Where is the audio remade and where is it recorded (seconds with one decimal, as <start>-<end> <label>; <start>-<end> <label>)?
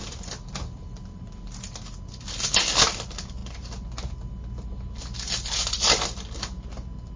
0.0-2.9 recorded; 2.9-3.4 remade; 3.4-7.2 recorded